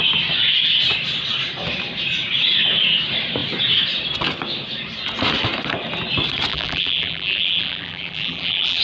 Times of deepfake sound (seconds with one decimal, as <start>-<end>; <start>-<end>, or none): 6.5-8.8